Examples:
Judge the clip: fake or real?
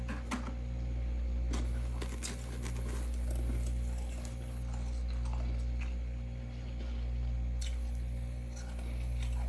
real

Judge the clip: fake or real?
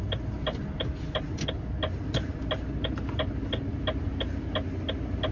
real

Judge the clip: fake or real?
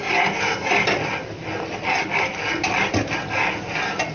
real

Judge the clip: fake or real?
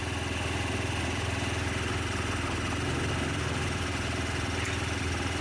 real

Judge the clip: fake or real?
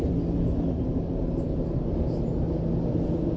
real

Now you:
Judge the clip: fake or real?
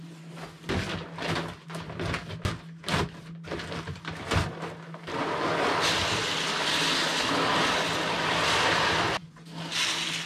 real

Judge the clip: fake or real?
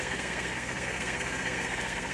fake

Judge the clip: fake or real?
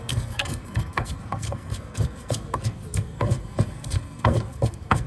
fake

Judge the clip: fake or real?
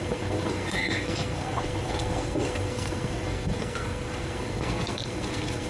fake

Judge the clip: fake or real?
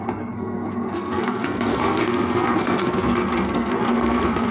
fake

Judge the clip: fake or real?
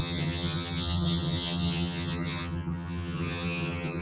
fake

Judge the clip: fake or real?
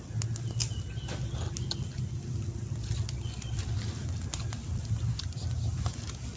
real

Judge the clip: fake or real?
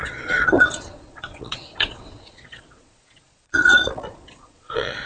fake